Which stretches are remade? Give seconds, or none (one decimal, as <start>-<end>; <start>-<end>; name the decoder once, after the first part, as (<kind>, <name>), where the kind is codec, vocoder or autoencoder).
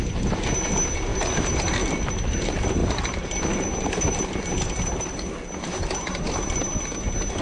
none